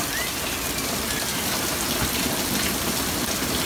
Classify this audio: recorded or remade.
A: recorded